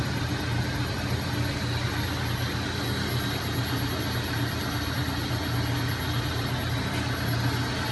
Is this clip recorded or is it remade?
recorded